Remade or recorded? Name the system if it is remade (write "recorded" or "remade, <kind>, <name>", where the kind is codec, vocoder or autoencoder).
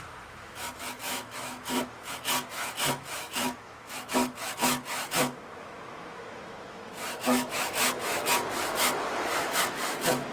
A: remade, autoencoder, DAC-VAE